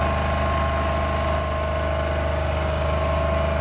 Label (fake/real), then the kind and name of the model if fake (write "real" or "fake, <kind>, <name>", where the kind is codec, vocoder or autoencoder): real